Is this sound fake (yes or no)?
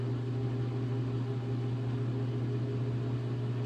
no